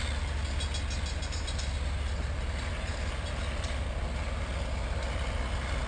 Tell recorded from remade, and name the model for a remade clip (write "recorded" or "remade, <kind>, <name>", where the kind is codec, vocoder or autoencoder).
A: recorded